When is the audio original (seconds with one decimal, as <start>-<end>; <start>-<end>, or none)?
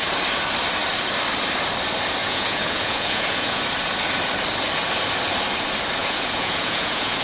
0.0-2.2; 3.6-6.0